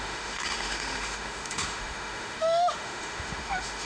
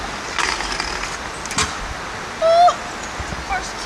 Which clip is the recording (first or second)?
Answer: second